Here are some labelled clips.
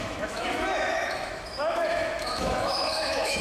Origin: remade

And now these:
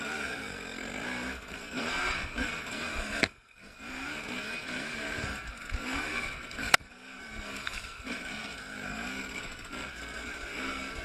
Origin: remade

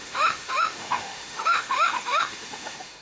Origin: remade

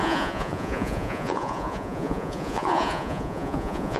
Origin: remade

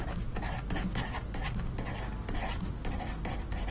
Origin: recorded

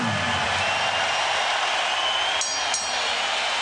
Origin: recorded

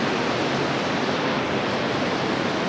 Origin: recorded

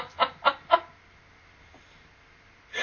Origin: recorded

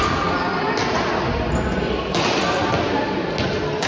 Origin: recorded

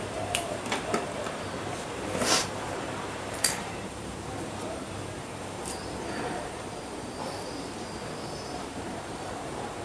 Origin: remade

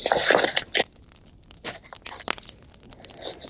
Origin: recorded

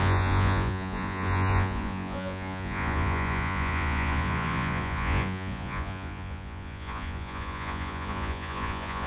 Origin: remade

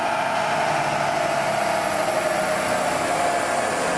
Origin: recorded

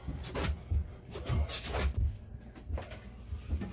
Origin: recorded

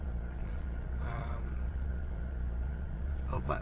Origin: remade